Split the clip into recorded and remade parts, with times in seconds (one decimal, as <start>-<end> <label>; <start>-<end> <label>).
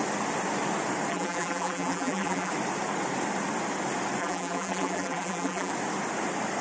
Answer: 0.0-1.1 recorded; 1.1-2.5 remade; 2.5-4.2 recorded; 4.2-5.7 remade; 5.7-6.6 recorded